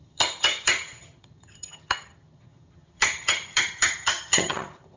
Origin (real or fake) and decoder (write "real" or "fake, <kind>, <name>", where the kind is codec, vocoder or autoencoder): fake, vocoder, HiFi-GAN